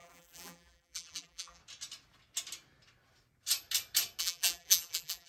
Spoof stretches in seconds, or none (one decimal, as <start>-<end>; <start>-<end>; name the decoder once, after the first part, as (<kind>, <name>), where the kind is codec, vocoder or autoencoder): 0.0-1.6 (vocoder, BigVGAN v2); 4.2-5.3